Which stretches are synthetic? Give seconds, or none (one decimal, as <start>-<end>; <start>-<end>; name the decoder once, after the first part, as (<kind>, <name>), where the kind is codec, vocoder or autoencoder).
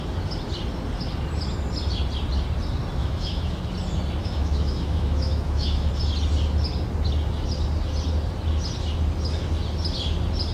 3.0-3.6 (autoencoder, DAC-VAE); 4.2-5.9